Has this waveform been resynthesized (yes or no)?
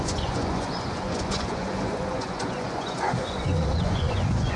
yes